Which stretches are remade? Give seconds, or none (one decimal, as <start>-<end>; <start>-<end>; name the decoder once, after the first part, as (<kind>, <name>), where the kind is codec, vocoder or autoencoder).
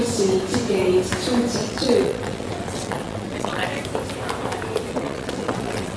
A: 1.6-3.8 (vocoder, WaveNeXt); 4.9-6.0